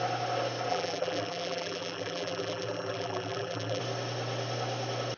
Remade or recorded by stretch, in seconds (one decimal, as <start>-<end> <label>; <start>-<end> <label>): 0.0-0.7 recorded; 0.7-3.8 remade; 3.8-5.2 recorded